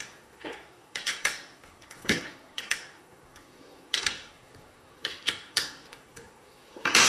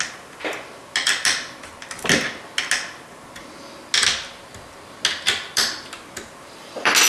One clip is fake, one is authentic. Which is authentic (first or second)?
second